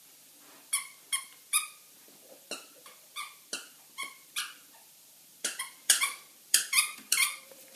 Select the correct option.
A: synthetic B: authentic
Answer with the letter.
A